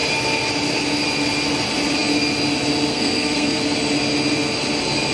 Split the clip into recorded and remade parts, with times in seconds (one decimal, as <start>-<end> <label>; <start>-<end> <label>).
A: 0.0-2.9 recorded; 2.9-3.6 remade; 3.6-5.1 recorded